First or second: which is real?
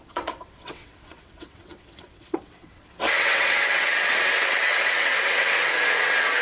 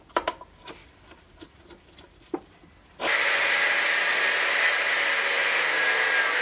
second